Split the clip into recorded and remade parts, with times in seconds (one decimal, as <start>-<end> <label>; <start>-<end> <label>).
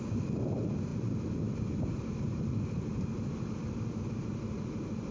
0.0-5.1 recorded